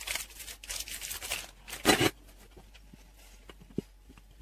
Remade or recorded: recorded